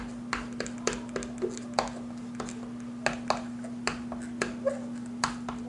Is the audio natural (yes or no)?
yes